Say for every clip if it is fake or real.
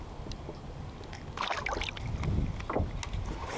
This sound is real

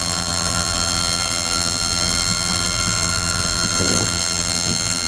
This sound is fake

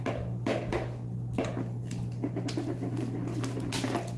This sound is real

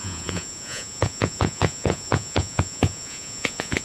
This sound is fake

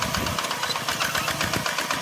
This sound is real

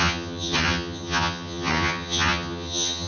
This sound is fake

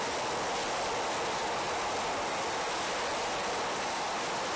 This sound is real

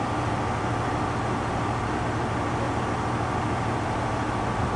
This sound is real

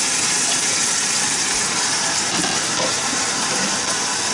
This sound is fake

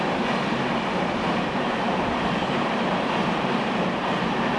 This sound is fake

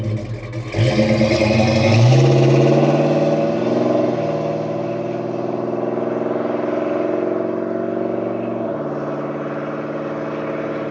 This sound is real